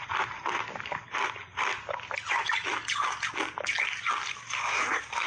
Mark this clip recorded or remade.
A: recorded